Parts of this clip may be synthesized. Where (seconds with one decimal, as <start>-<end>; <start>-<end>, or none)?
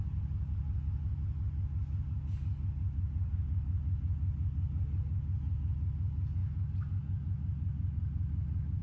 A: none